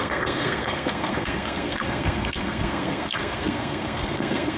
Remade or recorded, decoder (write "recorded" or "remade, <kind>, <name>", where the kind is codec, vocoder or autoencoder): remade, codec, SNAC